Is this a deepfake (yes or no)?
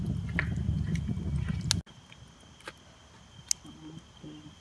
no